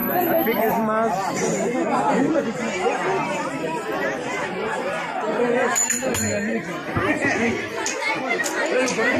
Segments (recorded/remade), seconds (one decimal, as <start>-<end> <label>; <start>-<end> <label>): 0.0-1.3 remade; 1.3-3.1 recorded; 3.1-3.9 remade; 3.9-9.2 recorded